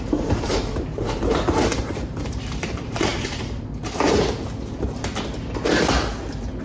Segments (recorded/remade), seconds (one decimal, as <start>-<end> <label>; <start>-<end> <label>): 0.0-0.5 remade; 0.5-1.8 recorded; 1.8-3.1 remade; 3.1-6.6 recorded